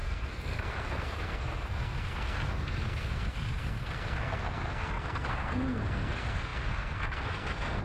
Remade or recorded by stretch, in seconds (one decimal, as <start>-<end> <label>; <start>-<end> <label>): 0.0-7.8 remade